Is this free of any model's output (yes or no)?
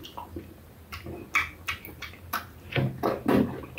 yes